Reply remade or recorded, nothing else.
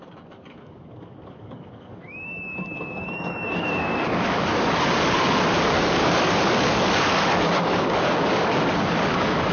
remade